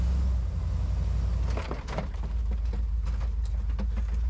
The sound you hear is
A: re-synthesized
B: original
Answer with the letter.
B